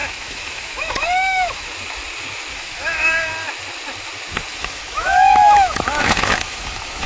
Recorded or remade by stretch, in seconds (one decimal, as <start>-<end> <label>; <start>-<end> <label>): 0.0-1.7 remade; 1.7-2.5 recorded; 2.5-3.3 remade; 3.3-4.5 recorded; 4.5-7.1 remade